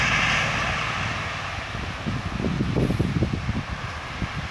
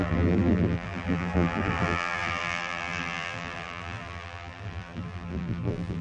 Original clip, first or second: first